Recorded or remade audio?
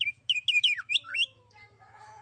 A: remade